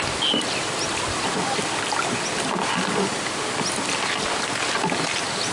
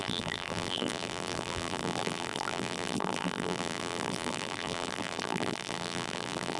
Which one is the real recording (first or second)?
first